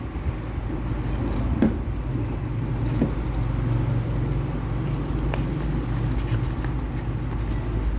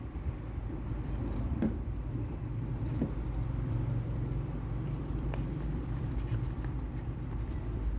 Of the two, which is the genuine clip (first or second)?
first